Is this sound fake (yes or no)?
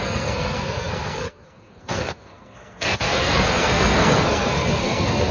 yes